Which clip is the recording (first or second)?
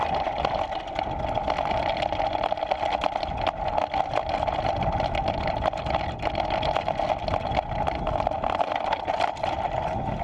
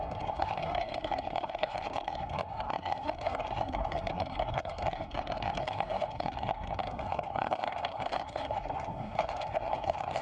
first